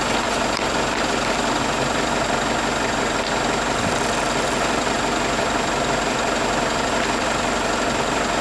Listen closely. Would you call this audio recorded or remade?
recorded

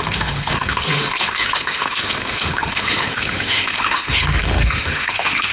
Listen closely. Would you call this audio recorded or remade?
remade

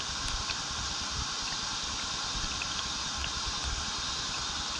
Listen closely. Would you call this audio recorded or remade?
recorded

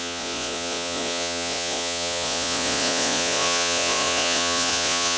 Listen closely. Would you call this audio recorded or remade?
remade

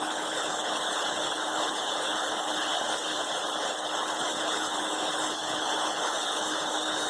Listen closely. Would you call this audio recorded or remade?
remade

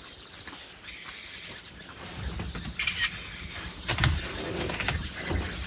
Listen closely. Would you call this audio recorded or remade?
recorded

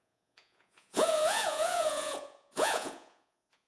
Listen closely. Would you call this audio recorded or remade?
remade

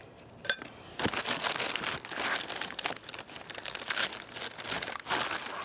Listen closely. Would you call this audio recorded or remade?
recorded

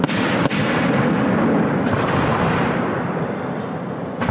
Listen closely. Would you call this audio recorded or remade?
recorded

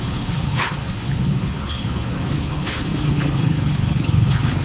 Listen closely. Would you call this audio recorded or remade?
remade